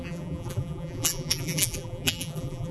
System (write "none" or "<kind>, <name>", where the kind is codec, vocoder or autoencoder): vocoder, BigVGAN v2